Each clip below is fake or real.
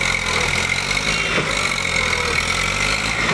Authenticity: real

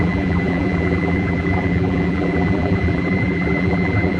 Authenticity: fake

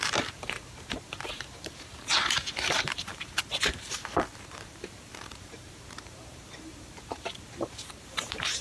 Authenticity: fake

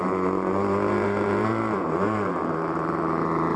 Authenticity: fake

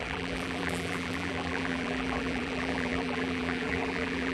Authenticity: fake